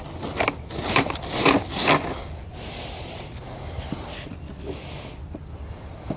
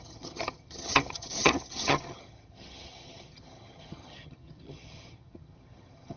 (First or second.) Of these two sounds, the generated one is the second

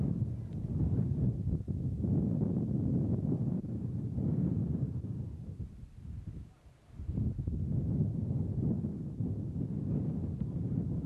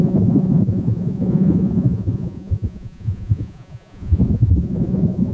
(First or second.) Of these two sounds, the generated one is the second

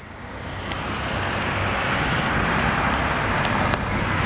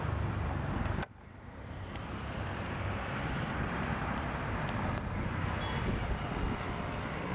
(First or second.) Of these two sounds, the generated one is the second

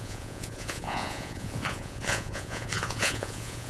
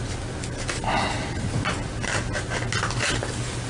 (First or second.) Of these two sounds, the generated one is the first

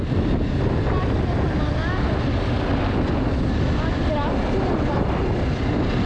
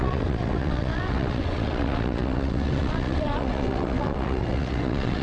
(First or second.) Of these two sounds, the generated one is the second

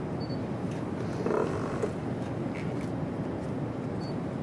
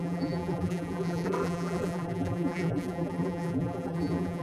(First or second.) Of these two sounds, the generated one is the second